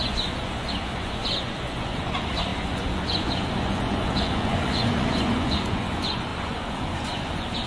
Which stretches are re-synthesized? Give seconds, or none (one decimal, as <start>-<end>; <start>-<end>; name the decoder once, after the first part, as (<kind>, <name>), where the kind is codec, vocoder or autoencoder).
0.0-7.7 (vocoder, Vocos)